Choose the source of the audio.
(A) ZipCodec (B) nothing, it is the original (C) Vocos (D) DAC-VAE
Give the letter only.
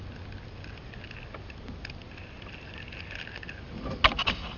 B